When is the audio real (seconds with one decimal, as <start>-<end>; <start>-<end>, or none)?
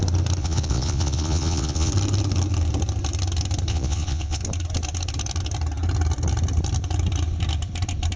0.0-0.4; 1.9-3.7; 4.4-8.2